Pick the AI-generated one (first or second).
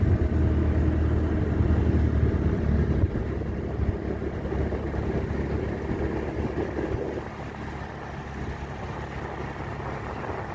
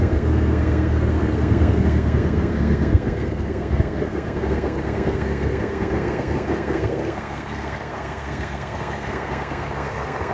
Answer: second